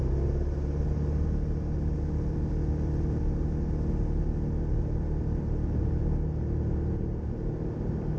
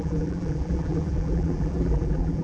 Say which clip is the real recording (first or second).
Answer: first